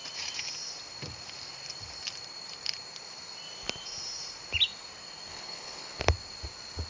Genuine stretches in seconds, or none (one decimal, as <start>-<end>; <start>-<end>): 0.0-5.3; 6.0-6.9